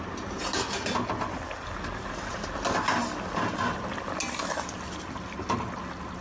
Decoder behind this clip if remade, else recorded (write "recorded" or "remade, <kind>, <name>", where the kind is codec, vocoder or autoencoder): recorded